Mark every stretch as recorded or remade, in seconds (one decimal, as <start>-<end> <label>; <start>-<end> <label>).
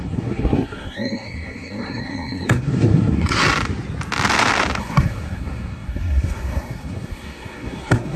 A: 0.0-3.4 remade; 3.4-4.8 recorded; 4.8-8.2 remade